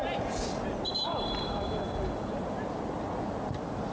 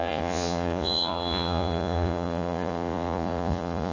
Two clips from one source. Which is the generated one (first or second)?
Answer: second